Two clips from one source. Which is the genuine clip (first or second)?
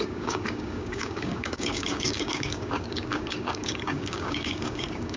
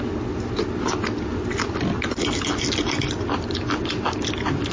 second